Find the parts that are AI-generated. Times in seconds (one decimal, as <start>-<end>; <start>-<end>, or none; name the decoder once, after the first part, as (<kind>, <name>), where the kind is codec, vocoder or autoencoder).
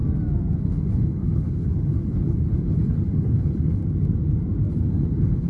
0.6-3.8 (codec, HILCodec); 4.7-5.5